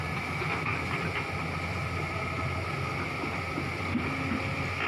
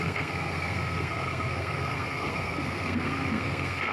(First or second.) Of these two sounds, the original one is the first